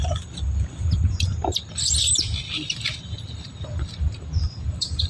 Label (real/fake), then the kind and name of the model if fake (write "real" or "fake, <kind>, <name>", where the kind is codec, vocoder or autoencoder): fake, vocoder, BigVGAN v2